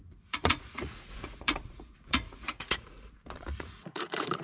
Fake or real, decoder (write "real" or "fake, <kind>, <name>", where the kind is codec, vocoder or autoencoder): fake, vocoder, Vocos